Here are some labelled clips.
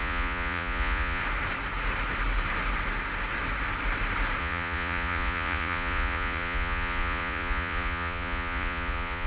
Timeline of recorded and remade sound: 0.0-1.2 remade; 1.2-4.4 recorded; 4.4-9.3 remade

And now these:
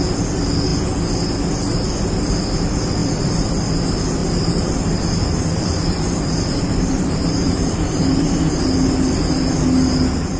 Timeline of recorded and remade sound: 0.0-3.0 recorded; 3.0-3.5 remade; 3.5-4.2 recorded; 4.2-8.6 remade; 8.6-10.4 recorded

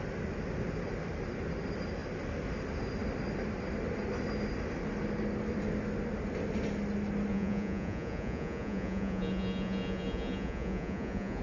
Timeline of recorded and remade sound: 0.0-7.3 recorded; 7.3-11.4 remade

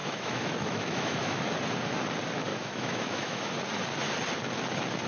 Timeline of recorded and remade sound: 0.0-1.4 remade; 1.4-2.5 recorded; 2.5-3.5 remade; 3.5-5.1 recorded

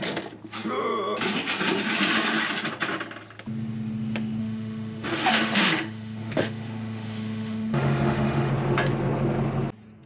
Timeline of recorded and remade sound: 0.0-4.4 recorded; 4.4-8.5 remade; 8.5-10.1 recorded